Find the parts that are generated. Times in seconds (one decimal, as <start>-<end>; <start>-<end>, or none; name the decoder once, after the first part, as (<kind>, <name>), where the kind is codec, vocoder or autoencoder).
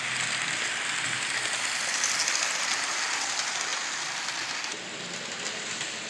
none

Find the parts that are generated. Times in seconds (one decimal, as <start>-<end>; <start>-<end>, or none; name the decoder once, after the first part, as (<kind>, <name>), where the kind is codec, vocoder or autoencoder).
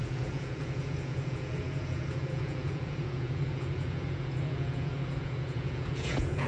0.0-6.5 (vocoder, Vocos)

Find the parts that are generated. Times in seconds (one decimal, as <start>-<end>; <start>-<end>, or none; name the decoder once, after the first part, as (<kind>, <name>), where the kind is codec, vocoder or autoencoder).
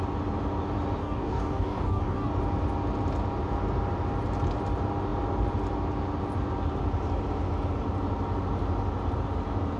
1.0-2.3 (codec, DAC)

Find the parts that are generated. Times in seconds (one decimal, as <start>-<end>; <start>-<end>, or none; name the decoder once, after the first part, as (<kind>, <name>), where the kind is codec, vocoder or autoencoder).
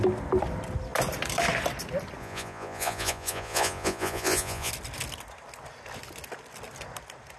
2.2-4.7 (vocoder, Vocos)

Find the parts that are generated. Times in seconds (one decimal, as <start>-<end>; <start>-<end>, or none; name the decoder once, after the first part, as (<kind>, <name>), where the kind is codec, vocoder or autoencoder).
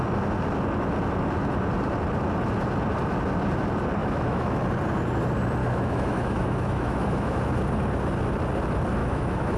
4.0-4.6 (autoencoder, DAC-VAE); 5.6-7.4; 9.0-9.6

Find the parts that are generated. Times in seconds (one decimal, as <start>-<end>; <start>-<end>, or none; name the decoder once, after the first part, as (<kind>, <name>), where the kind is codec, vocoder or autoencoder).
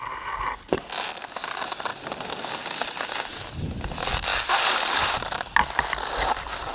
none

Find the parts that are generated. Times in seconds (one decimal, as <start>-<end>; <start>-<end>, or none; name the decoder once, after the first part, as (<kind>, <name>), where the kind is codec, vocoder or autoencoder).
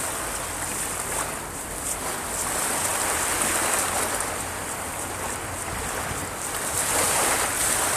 0.7-2.0 (vocoder, BigVGAN v2); 2.9-5.8